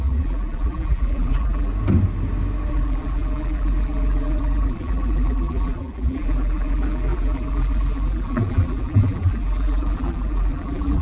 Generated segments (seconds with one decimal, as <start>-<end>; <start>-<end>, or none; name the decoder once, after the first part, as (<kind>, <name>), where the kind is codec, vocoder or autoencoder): 0.0-1.7 (vocoder, BigVGAN v2); 2.7-11.0